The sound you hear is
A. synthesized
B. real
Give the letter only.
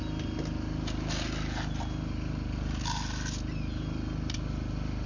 B